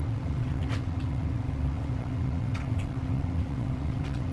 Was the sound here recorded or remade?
remade